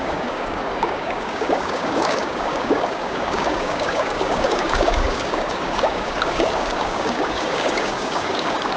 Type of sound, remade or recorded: remade